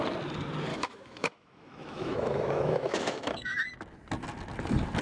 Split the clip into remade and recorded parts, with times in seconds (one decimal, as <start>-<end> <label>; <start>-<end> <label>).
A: 0.0-0.7 recorded; 0.7-3.7 remade; 3.7-5.0 recorded